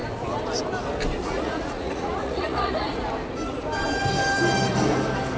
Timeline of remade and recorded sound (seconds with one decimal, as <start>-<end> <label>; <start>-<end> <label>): 0.0-1.2 recorded; 1.2-3.0 remade; 3.0-5.4 recorded